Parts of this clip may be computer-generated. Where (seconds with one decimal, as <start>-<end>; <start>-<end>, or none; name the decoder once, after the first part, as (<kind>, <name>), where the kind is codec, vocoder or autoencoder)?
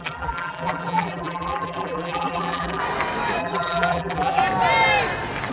0.0-2.8 (vocoder, BigVGAN v2); 3.4-4.4